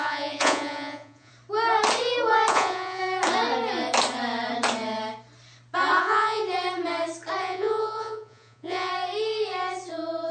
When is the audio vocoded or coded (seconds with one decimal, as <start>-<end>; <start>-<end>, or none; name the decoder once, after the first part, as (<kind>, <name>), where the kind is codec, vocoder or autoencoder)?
0.0-1.3 (vocoder, Vocos); 2.5-3.0; 6.0-6.4; 7.4-8.9

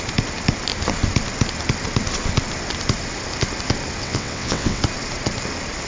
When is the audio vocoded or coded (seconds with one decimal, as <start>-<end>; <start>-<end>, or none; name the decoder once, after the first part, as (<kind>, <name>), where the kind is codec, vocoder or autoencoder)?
4.0-4.8 (vocoder, WaveNeXt)

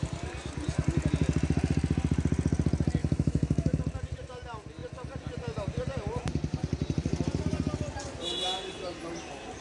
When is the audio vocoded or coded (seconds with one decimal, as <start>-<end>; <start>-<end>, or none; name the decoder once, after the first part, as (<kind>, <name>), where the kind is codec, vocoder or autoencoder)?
3.0-3.8 (autoencoder, DAC-VAE)

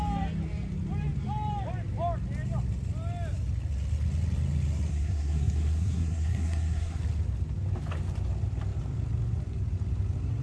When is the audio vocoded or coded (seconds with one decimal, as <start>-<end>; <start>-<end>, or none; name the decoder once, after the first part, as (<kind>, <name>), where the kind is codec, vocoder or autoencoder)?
4.9-7.0 (codec, SNAC)

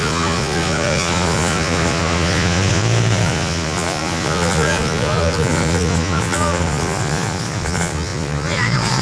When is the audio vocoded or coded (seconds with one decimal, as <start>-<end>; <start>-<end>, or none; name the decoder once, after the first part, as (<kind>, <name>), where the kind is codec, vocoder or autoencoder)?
0.0-9.0 (vocoder, Vocos)

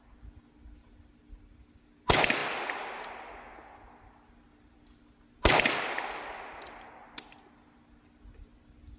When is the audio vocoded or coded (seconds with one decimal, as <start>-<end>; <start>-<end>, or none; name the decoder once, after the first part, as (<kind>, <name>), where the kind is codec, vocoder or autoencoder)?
none

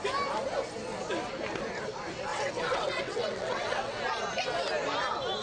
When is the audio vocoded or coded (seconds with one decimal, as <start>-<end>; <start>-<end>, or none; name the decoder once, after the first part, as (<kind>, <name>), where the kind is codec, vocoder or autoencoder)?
2.3-4.0 (vocoder, WaveNeXt)

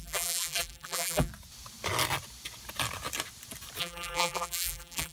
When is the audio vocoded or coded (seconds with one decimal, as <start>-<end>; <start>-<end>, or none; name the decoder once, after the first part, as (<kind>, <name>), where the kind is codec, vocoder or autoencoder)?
0.0-1.3 (vocoder, BigVGAN v2); 3.8-5.1